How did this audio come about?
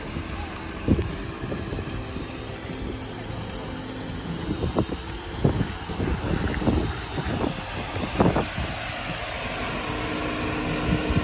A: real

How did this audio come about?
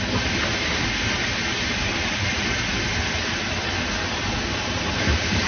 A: real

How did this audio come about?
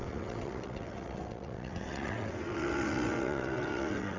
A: fake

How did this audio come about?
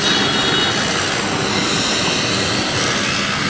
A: real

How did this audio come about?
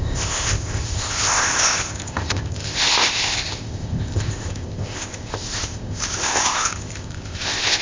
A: fake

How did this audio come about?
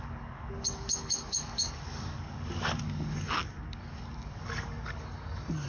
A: fake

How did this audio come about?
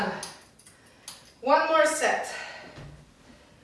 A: real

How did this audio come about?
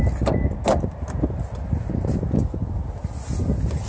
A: real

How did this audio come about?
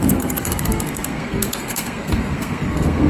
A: fake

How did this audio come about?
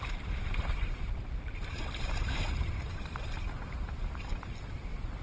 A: real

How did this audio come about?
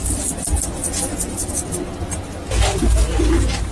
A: real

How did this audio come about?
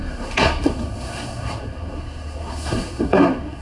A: fake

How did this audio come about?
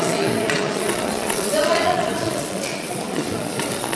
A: fake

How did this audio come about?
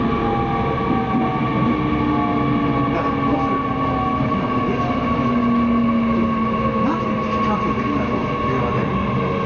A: real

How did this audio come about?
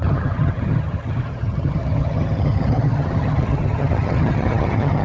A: fake